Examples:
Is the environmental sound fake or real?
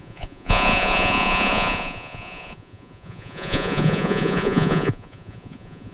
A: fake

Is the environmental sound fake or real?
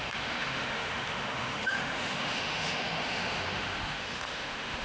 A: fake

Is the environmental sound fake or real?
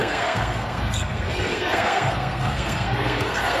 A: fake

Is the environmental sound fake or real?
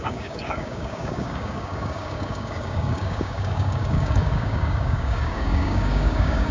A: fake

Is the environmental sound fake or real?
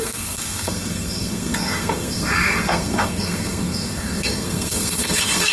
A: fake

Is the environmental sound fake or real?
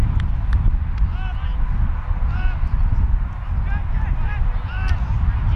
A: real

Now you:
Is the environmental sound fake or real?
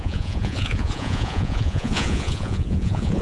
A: fake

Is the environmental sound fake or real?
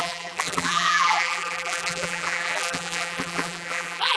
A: fake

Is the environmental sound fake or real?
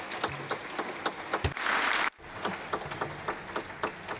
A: real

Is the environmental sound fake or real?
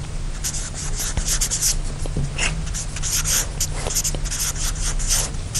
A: real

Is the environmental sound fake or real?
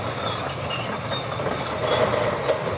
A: real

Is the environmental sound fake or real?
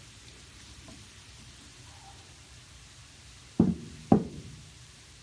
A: fake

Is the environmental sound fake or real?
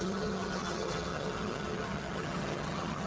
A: fake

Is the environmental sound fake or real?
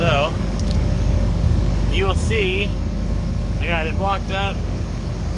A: fake